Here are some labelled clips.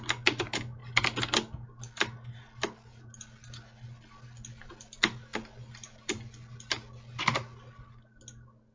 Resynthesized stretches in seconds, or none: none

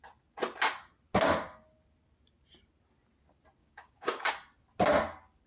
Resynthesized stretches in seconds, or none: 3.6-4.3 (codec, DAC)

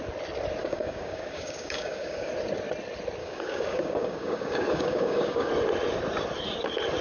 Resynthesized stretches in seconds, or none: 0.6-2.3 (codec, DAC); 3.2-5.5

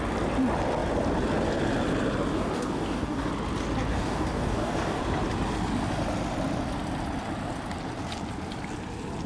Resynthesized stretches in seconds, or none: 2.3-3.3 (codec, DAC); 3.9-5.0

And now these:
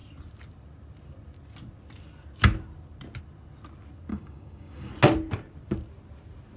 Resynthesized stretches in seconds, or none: 4.1-4.9 (codec, DAC)

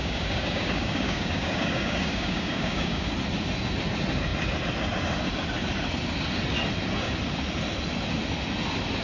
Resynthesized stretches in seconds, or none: 0.0-3.1 (codec, DAC)

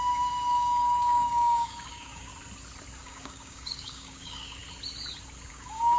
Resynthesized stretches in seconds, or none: 0.0-2.3 (codec, DAC); 3.0-4.6; 5.5-6.0

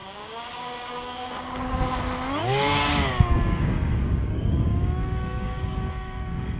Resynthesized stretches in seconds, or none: 0.0-1.8 (codec, DAC); 2.4-6.6